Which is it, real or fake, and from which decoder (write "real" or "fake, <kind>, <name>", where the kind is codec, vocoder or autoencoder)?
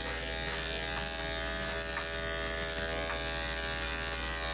real